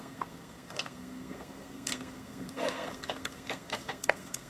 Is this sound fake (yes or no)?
yes